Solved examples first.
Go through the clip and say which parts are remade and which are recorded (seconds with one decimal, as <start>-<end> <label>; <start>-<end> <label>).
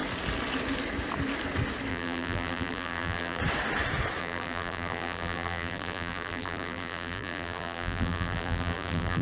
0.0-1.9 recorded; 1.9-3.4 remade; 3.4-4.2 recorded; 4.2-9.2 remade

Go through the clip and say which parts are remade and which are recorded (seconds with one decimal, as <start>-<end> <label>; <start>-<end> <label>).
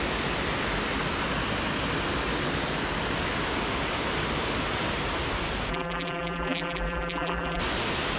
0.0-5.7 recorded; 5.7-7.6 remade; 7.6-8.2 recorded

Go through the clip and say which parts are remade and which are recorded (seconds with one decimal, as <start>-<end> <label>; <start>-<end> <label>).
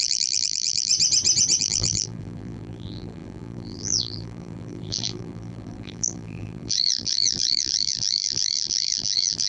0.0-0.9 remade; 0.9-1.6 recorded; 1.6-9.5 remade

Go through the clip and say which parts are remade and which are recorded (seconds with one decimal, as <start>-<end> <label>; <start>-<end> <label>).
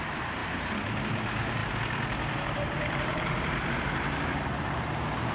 0.0-1.6 remade; 1.6-2.4 recorded; 2.4-5.3 remade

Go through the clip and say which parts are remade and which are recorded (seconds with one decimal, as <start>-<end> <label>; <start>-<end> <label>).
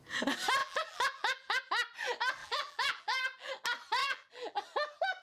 0.0-0.6 recorded; 0.6-1.7 remade; 1.7-2.4 recorded; 2.4-3.5 remade; 3.5-4.0 recorded; 4.0-4.6 remade; 4.6-5.2 recorded